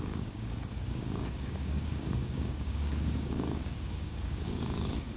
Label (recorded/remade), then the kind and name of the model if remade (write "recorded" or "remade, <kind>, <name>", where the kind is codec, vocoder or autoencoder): remade, codec, DAC